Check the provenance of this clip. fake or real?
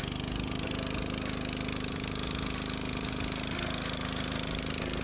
real